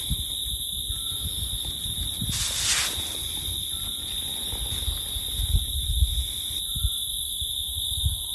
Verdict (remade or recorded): recorded